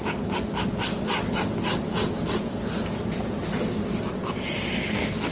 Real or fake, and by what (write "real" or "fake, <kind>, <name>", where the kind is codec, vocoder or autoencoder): real